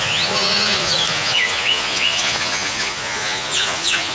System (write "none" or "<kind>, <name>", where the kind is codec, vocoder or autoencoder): vocoder, Vocos